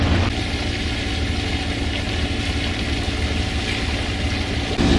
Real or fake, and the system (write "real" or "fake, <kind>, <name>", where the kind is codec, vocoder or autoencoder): real